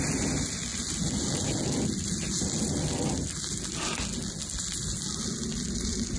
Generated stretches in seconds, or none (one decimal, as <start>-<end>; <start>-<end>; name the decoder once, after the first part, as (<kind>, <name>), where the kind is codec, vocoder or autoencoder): none